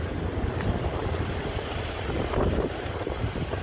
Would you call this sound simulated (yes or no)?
no